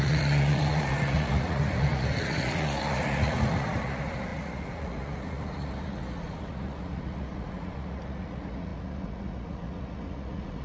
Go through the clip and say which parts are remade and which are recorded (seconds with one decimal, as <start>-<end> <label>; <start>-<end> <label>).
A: 0.0-10.6 remade